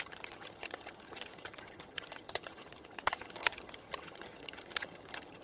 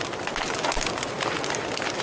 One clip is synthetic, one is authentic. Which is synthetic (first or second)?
first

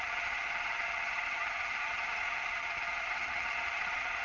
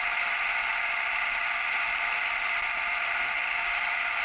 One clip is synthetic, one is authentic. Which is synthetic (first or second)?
first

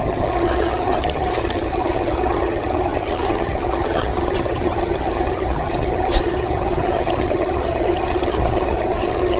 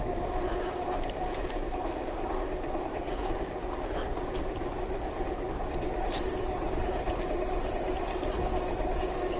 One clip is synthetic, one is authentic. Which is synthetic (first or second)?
first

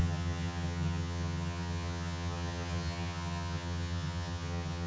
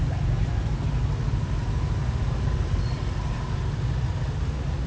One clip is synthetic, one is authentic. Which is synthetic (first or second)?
first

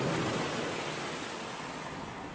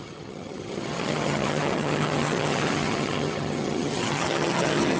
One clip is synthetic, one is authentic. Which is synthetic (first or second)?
second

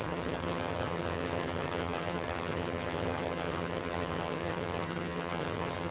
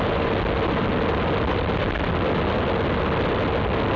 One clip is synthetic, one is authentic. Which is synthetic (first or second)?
first